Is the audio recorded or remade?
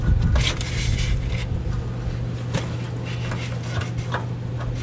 recorded